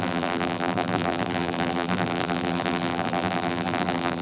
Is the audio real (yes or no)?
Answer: no